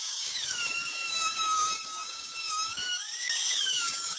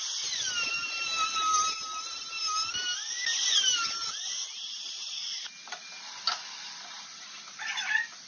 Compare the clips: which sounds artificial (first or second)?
first